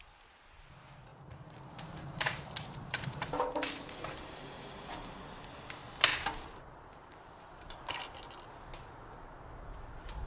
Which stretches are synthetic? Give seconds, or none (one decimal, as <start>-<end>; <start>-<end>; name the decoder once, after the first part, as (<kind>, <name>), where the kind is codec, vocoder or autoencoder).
1.1-5.2 (vocoder, BigVGAN v2); 6.1-7.7